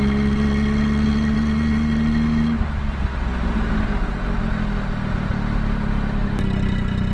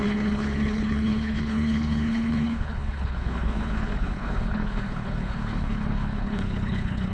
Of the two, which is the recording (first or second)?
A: first